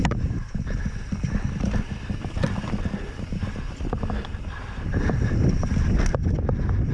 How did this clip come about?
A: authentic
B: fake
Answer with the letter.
A